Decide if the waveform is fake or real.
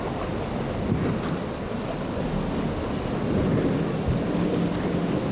real